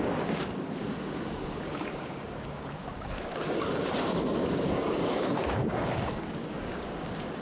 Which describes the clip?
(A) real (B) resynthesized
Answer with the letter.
B